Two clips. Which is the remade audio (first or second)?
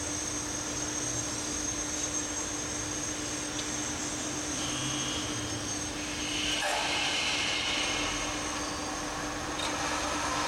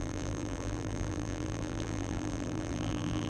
second